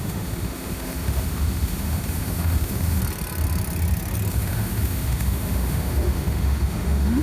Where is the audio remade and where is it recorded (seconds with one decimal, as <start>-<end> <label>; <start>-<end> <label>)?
0.0-3.0 remade; 3.0-4.3 recorded; 4.3-7.2 remade